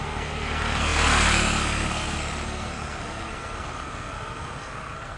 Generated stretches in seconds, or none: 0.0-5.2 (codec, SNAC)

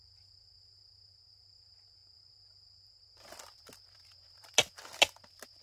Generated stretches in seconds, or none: none

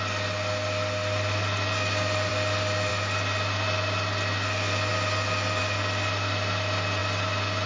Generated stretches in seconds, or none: none

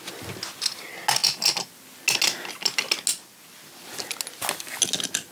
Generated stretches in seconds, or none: none

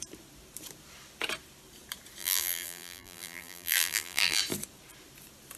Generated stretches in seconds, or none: 2.2-4.4 (vocoder, BigVGAN v2)

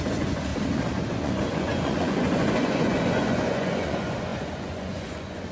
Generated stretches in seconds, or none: 0.0-0.5 (vocoder, Vocos); 1.1-5.5

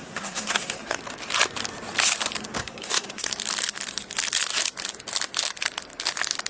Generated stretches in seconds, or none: 0.0-1.0 (codec, SNAC); 2.6-3.3

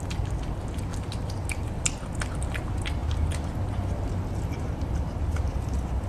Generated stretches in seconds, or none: none